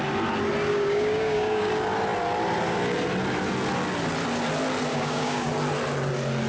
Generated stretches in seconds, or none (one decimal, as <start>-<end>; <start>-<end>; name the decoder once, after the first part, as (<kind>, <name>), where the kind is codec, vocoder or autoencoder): 0.7-1.7 (codec, DAC); 4.9-5.5